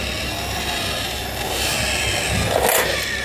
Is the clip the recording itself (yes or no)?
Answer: yes